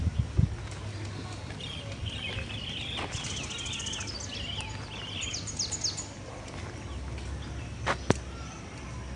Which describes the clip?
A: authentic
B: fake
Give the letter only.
A